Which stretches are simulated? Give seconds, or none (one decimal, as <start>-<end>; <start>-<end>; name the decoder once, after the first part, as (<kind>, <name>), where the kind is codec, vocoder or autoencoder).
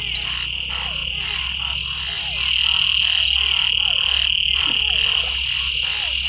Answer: none